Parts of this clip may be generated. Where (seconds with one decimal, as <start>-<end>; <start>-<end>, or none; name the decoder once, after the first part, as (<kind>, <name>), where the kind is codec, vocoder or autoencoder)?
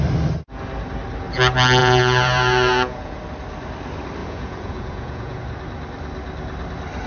1.8-3.2 (vocoder, Vocos); 4.2-5.4